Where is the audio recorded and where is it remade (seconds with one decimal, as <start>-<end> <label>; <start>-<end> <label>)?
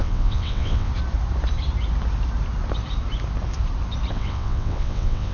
0.0-0.9 remade; 0.9-4.1 recorded; 4.1-5.3 remade